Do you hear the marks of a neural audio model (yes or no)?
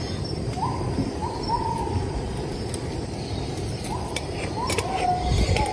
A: no